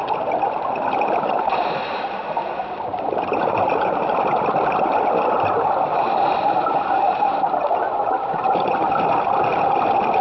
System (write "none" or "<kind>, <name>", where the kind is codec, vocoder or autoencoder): vocoder, BigVGAN v2